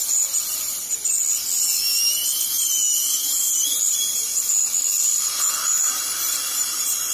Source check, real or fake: real